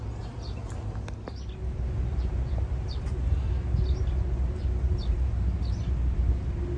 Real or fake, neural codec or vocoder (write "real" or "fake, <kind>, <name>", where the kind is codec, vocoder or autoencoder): real